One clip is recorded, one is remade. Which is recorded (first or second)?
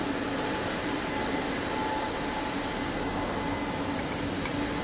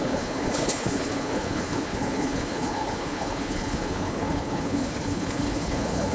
first